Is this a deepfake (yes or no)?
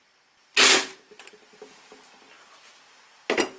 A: no